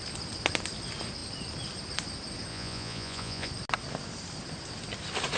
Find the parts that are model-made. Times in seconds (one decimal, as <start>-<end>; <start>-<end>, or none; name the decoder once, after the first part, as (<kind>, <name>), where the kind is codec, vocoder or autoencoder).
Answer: 2.5-3.5 (vocoder, Vocos)